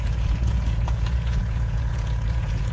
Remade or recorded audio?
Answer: remade